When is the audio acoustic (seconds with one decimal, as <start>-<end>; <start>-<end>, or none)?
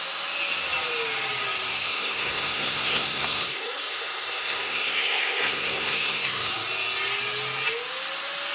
0.0-1.7; 6.5-8.5